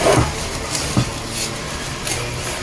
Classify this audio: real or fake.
real